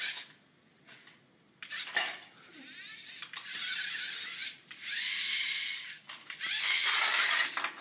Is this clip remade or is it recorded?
recorded